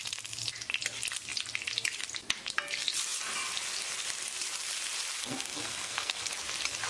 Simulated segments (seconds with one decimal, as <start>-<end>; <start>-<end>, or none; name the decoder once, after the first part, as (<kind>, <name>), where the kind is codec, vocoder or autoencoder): 5.2-6.3 (codec, SNAC)